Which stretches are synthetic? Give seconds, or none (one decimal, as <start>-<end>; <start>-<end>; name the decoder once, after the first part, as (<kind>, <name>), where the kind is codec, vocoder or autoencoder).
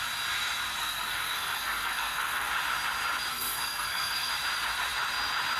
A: 0.8-2.5 (codec, SNAC); 3.3-4.3